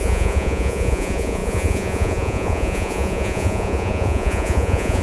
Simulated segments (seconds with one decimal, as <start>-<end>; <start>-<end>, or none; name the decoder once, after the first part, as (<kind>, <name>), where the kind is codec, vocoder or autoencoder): 0.0-5.0 (vocoder, Vocos)